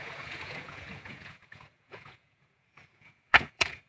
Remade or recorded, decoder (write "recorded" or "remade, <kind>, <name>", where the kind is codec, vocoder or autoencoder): remade, vocoder, Vocos